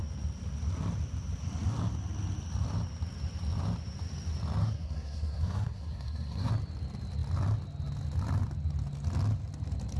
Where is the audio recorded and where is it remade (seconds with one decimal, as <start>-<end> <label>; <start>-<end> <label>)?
0.0-4.6 recorded; 4.6-6.5 remade; 6.5-10.0 recorded